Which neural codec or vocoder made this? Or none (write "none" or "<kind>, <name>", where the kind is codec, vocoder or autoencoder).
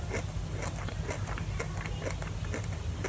none